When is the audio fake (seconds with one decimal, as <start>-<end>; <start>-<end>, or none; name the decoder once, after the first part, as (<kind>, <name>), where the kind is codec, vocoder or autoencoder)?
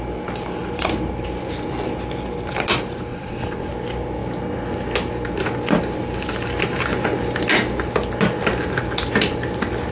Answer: 3.1-3.7 (vocoder, WaveNeXt)